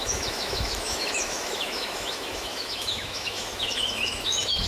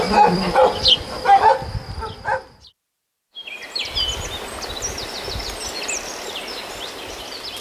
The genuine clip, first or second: second